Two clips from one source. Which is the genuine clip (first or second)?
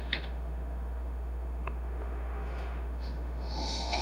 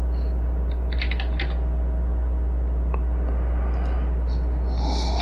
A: second